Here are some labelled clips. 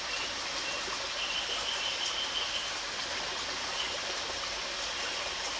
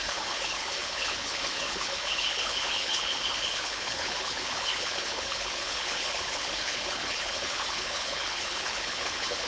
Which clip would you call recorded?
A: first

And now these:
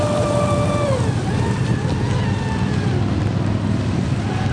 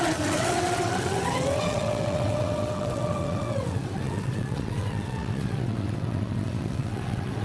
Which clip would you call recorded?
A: first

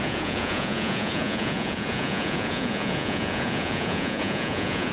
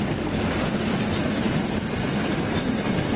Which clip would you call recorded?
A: second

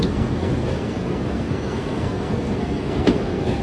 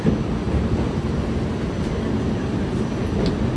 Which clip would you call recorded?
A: second